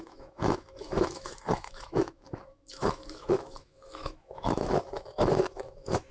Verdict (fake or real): fake